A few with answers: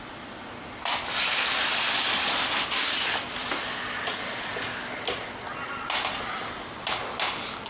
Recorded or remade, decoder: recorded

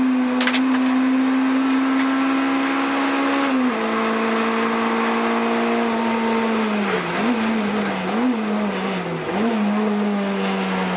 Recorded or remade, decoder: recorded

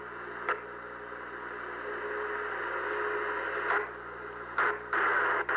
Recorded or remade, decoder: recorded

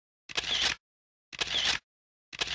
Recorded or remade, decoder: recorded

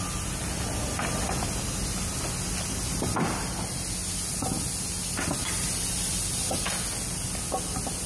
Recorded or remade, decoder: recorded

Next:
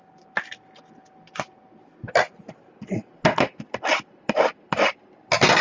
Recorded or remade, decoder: recorded